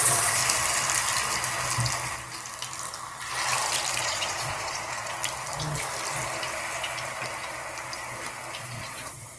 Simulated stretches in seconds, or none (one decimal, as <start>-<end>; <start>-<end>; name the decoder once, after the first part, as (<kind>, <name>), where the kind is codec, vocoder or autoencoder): 0.0-0.4 (vocoder, Vocos); 4.0-5.2; 8.6-9.4